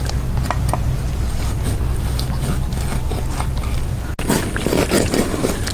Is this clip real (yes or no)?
yes